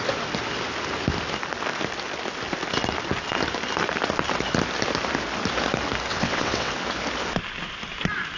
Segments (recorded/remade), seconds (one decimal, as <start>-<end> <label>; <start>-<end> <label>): 0.0-6.1 recorded; 6.1-6.7 remade; 6.7-8.4 recorded